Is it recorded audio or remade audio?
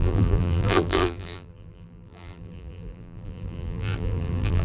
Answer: remade